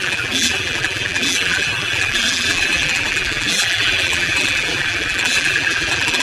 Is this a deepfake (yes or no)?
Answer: yes